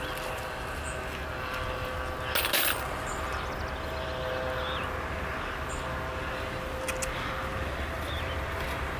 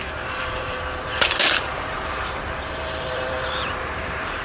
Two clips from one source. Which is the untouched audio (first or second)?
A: first